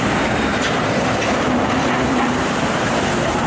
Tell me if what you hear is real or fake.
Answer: fake